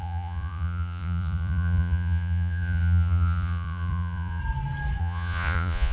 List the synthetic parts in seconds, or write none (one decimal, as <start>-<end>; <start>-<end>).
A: 0.0-4.4; 5.0-5.9